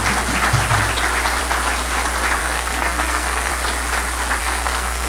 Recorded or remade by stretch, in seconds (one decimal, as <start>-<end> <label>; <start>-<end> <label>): 0.0-2.4 recorded; 2.4-3.5 remade; 3.5-4.4 recorded; 4.4-5.1 remade